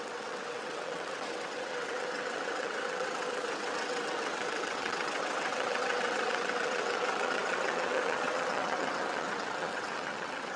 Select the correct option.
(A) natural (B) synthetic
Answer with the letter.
B